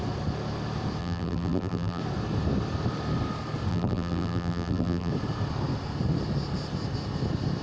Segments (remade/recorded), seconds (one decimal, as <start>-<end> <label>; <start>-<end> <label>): 0.0-1.0 recorded; 1.0-2.0 remade; 2.0-3.7 recorded; 3.7-5.1 remade; 5.1-7.6 recorded